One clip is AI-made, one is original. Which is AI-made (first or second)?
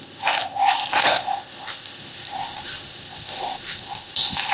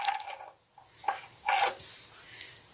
first